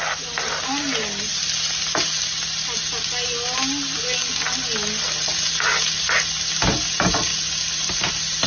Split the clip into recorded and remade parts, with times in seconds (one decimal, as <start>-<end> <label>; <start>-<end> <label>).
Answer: 0.0-8.5 recorded